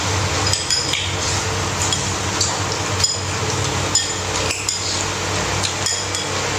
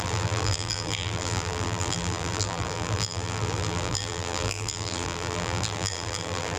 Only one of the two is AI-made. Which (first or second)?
second